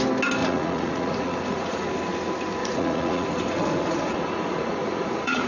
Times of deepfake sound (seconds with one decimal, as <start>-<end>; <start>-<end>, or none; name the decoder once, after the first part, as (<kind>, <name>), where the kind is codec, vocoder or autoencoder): 0.4-1.9 (vocoder, Vocos); 2.6-5.5

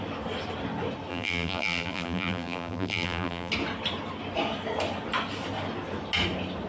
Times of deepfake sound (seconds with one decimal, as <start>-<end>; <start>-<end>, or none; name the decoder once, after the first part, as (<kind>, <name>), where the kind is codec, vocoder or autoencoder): 1.1-3.5 (vocoder, BigVGAN v2)